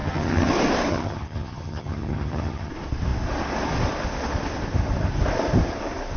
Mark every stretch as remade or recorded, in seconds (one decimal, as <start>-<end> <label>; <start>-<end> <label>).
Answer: 0.0-0.5 remade; 0.5-0.9 recorded; 0.9-2.7 remade; 2.7-6.2 recorded